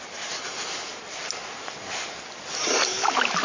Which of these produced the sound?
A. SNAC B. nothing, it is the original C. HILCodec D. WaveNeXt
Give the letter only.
B